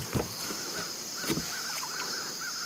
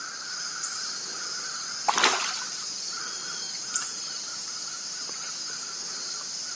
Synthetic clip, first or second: first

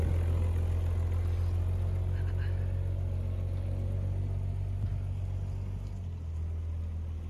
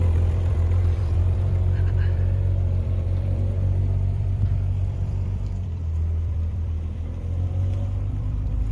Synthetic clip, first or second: second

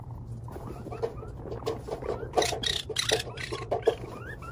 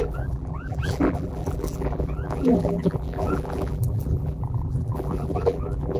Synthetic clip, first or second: second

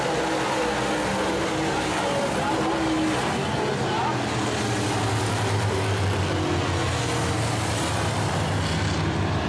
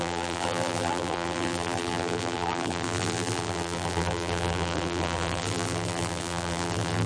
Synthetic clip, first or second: second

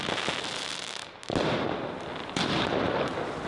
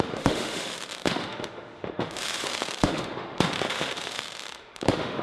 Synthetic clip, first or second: second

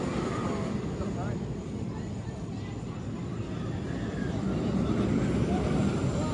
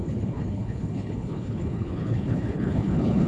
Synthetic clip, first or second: second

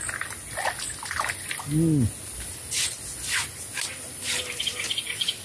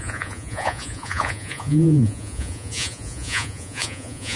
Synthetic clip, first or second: second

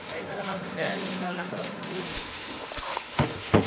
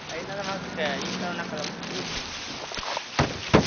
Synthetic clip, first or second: first